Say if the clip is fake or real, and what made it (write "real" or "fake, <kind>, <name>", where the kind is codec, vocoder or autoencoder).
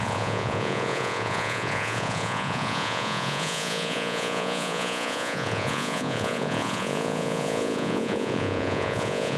fake, vocoder, Vocos